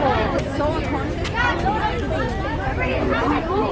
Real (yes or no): yes